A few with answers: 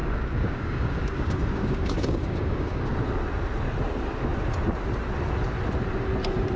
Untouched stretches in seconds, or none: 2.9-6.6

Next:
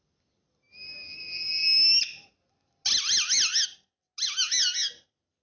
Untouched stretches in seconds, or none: 0.0-5.4

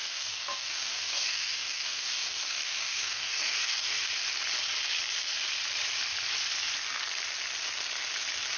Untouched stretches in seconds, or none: 4.0-8.6

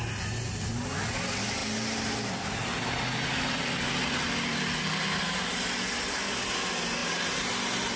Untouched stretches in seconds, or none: 0.0-8.0

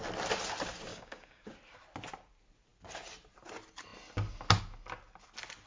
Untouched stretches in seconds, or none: 0.0-0.9; 1.5-5.7